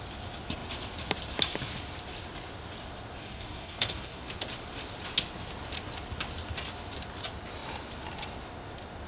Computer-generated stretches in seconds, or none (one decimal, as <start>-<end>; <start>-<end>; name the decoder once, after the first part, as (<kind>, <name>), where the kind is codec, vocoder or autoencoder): 3.2-4.3 (codec, DAC)